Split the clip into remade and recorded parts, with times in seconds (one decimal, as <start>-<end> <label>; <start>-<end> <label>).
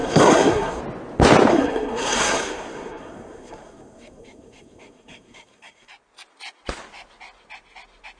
0.0-0.8 remade; 0.8-1.5 recorded; 1.5-5.9 remade; 5.9-8.2 recorded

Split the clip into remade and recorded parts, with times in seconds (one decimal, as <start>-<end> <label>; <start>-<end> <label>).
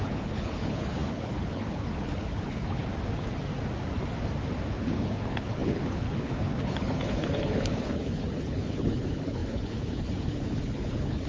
0.0-2.9 remade; 2.9-4.7 recorded; 4.7-11.3 remade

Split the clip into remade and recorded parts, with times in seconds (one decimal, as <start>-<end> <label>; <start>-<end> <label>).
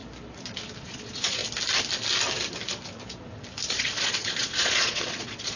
0.0-0.8 recorded; 0.8-1.4 remade; 1.4-3.7 recorded; 3.7-5.6 remade